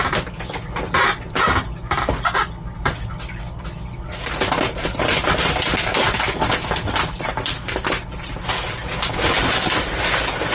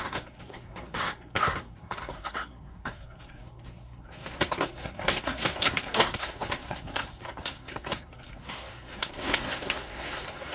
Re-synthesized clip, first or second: second